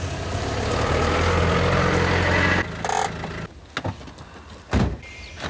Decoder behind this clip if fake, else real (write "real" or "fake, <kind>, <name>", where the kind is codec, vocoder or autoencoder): real